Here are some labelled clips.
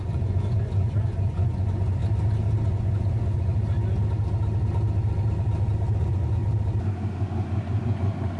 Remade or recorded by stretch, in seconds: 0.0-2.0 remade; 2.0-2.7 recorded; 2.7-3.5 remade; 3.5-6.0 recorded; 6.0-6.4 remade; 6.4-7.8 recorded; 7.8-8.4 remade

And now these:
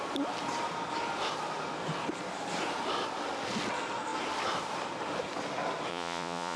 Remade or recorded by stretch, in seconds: 0.0-5.9 recorded; 5.9-6.6 remade

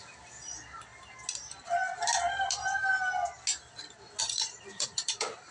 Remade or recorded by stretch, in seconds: 0.0-0.9 remade; 0.9-4.2 recorded; 4.2-5.5 remade

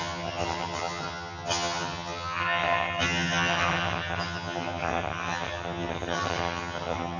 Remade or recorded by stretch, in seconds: 0.0-7.2 remade